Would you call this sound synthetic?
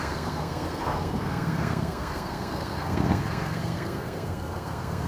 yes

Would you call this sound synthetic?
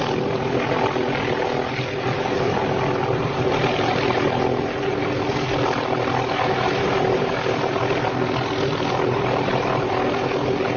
no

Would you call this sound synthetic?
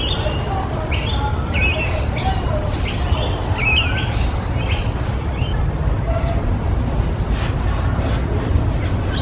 no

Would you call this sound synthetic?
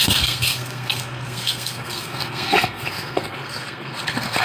yes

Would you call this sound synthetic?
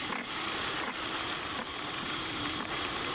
yes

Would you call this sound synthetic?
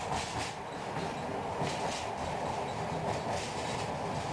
no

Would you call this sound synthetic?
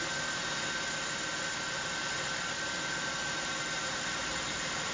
no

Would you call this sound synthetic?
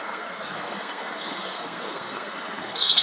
yes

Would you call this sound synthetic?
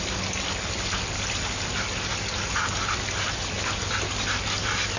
no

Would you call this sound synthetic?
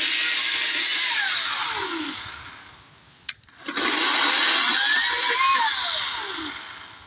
no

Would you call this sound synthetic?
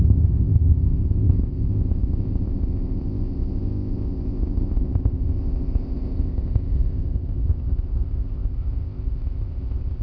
yes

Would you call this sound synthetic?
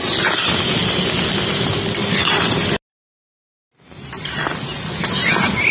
no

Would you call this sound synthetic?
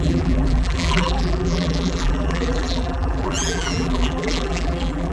yes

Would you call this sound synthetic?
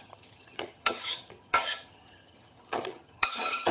yes